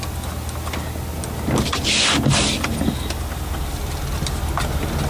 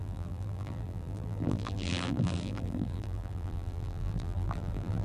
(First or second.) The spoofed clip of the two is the second